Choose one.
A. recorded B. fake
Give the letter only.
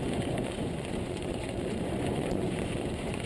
B